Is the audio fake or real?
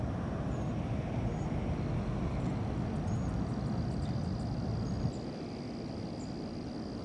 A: real